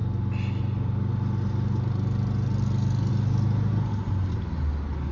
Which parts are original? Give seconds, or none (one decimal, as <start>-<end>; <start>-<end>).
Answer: 0.0-5.1